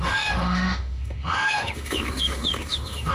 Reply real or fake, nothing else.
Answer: fake